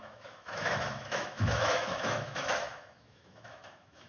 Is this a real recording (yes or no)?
no